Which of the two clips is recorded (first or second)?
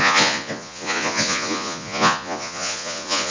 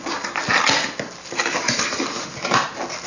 second